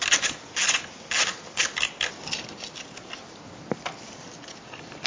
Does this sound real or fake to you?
real